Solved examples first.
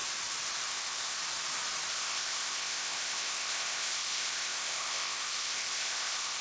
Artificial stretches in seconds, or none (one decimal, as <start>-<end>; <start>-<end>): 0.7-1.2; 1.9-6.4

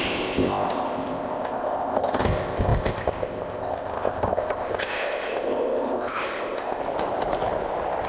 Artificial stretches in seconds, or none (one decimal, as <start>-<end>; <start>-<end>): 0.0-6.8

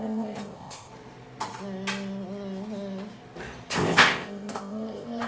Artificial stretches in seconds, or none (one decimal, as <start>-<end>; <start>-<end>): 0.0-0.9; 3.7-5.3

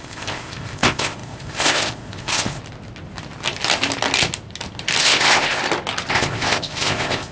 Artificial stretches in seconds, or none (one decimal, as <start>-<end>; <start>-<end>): 0.0-2.6; 5.0-5.6; 6.1-7.3

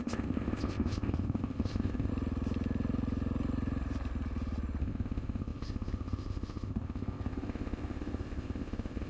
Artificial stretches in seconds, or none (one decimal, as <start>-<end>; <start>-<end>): 0.0-2.1; 4.8-9.1

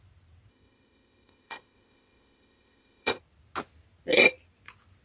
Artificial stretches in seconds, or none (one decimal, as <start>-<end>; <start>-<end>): 0.5-3.2

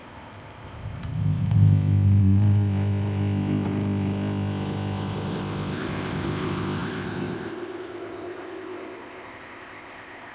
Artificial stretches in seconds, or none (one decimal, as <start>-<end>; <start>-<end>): 0.0-10.3